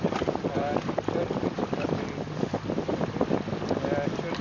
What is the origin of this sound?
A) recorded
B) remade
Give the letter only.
B